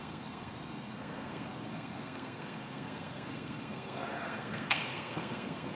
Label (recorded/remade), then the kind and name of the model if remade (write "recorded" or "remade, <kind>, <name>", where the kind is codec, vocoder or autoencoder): remade, codec, SNAC